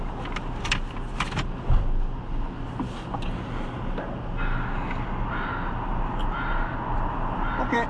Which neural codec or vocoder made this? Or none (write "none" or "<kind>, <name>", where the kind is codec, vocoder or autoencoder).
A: none